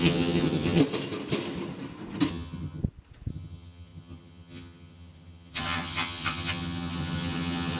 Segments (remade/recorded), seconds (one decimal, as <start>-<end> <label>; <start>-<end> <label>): 0.0-0.8 remade; 0.8-2.3 recorded; 2.3-2.8 remade; 2.8-3.3 recorded; 3.3-7.8 remade